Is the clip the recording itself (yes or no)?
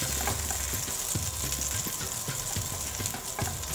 yes